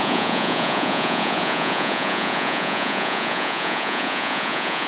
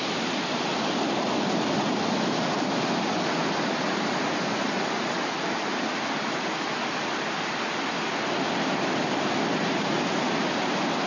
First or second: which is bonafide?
second